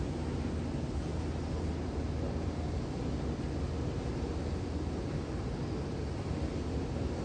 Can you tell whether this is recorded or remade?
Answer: recorded